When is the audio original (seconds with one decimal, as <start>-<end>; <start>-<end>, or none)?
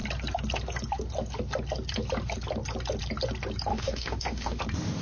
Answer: 0.0-3.7; 4.6-5.0